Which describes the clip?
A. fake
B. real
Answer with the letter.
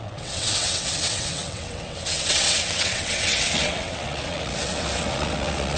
A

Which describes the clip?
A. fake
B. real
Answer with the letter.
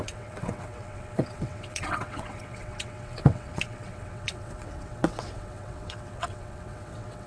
A